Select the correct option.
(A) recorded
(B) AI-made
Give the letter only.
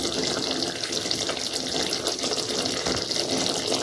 A